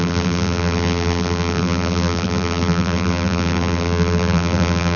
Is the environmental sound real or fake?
fake